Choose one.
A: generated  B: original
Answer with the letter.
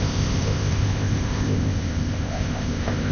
A